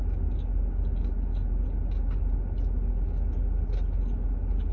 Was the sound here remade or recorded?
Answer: recorded